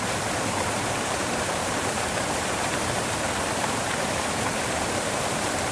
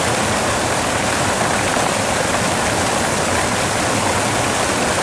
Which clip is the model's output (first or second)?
first